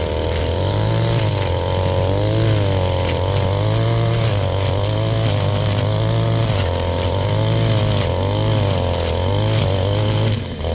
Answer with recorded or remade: recorded